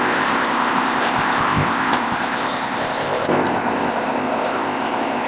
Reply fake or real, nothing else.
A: fake